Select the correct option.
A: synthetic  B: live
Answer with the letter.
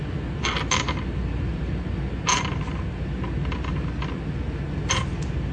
B